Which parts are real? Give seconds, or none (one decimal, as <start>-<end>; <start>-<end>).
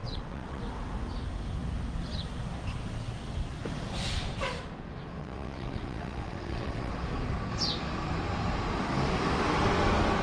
0.6-5.2; 6.9-10.2